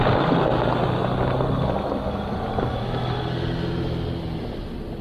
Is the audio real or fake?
real